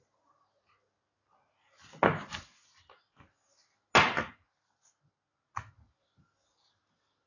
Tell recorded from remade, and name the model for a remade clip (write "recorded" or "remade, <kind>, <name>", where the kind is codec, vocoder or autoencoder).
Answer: recorded